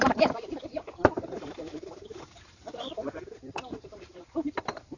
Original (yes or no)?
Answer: no